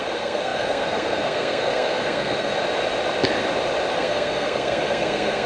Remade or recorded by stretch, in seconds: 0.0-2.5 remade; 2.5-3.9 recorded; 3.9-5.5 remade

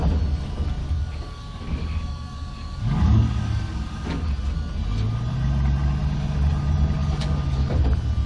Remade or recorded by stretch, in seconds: 0.0-0.8 recorded; 0.8-4.3 remade; 4.3-7.0 recorded; 7.0-7.8 remade; 7.8-8.3 recorded

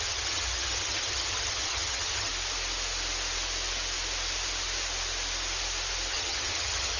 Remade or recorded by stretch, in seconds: 0.0-2.3 remade; 2.3-6.1 recorded; 6.1-7.0 remade

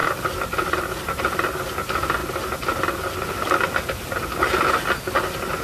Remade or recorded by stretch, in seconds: 0.0-5.6 recorded

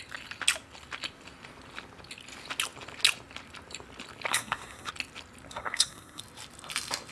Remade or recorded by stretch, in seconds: 0.0-4.3 recorded; 4.3-4.9 remade; 4.9-5.5 recorded; 5.5-6.2 remade; 6.2-7.1 recorded

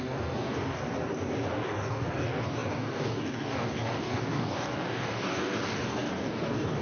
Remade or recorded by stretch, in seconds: 0.0-0.8 remade; 0.8-1.5 recorded; 1.5-6.8 remade

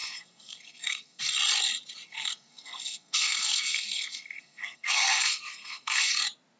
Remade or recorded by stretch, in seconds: 0.0-1.2 remade; 1.2-2.1 recorded; 2.1-6.1 remade; 6.1-6.6 recorded